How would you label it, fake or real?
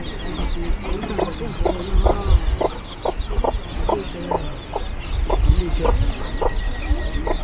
real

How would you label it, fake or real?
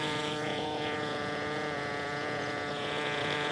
fake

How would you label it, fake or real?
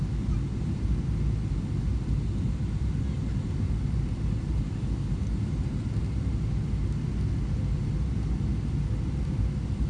real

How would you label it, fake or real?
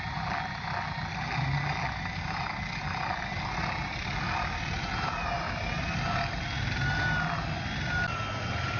real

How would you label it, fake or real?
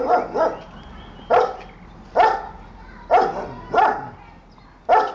real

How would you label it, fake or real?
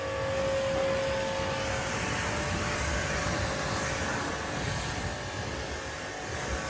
real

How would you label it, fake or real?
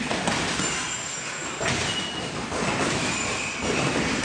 real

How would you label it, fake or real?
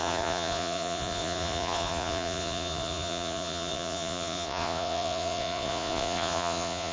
fake